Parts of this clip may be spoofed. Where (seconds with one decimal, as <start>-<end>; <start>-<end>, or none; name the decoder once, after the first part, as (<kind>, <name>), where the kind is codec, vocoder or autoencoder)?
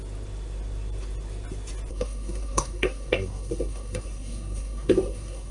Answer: 1.9-5.5 (codec, SNAC)